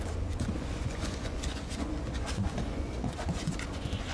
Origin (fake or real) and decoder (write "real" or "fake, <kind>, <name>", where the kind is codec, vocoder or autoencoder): fake, vocoder, Vocos